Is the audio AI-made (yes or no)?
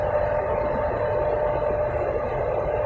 no